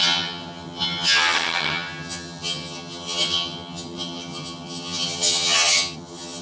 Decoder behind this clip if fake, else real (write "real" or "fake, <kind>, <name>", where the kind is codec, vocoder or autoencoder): fake, vocoder, HiFi-GAN